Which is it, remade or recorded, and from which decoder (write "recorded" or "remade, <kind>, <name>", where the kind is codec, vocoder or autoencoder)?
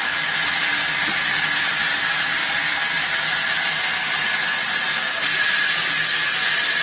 recorded